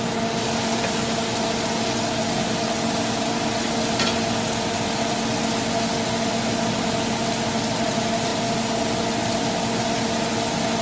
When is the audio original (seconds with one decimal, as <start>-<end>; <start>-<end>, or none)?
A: 0.0-10.8